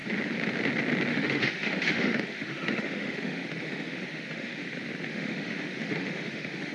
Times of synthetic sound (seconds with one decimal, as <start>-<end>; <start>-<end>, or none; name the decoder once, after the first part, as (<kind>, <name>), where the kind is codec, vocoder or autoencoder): 1.1-4.6 (autoencoder, DAC-VAE); 5.1-6.7